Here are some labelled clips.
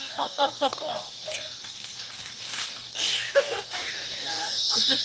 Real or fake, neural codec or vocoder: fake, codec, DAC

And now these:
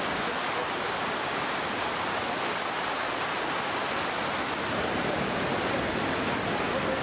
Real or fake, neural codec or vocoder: real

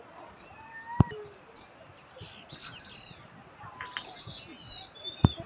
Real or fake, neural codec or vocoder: real